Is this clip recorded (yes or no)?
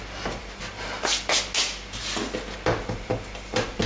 yes